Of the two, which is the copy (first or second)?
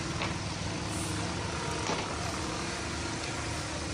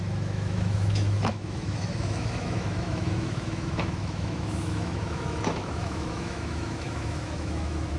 second